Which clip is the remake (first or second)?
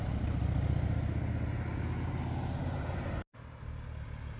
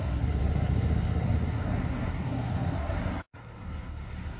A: second